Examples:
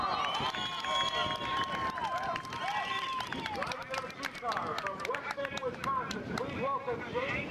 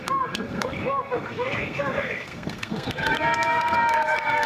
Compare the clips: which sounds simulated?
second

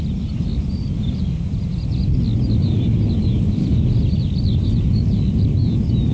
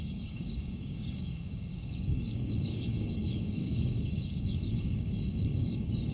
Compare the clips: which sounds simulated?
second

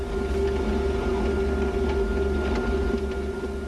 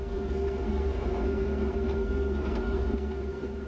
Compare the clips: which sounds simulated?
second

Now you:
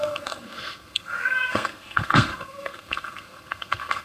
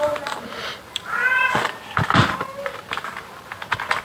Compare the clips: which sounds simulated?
first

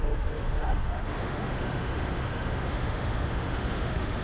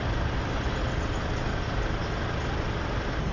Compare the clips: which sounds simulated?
first